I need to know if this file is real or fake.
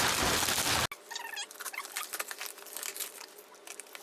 real